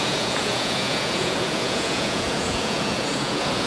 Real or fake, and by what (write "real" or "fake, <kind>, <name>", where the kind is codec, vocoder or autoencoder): fake, vocoder, Vocos